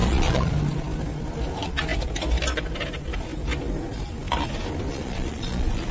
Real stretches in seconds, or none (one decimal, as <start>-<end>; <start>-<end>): 0.5-4.9

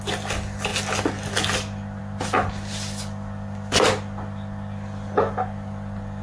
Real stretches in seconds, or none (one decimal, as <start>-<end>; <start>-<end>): 0.0-6.2

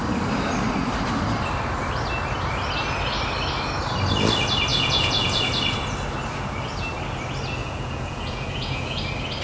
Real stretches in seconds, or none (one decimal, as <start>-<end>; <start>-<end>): 0.0-4.7; 5.4-7.6; 9.0-9.4

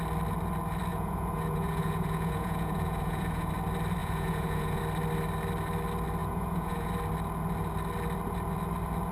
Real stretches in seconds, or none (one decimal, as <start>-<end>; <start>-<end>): 0.0-0.9; 3.5-4.0; 4.8-6.2; 6.9-9.1

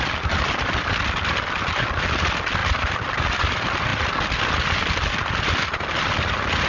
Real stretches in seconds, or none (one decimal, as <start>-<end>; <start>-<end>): 0.0-6.7

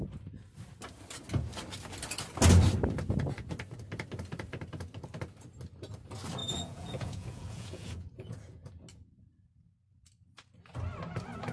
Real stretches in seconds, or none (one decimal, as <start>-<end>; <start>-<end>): 0.0-6.4; 8.7-11.5

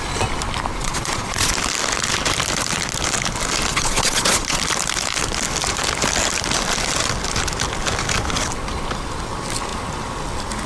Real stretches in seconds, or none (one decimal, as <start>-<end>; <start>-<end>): 0.0-0.7; 1.5-3.7; 4.6-10.7